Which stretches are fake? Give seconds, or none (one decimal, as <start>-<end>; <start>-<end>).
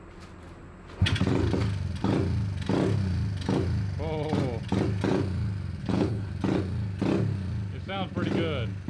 5.8-6.3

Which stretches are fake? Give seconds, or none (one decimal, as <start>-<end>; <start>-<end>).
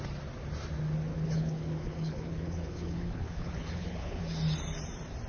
1.1-4.2